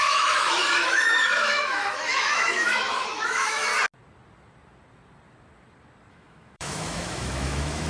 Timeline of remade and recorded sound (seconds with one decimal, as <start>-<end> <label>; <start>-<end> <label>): 0.0-3.7 remade; 3.7-6.1 recorded; 6.1-7.9 remade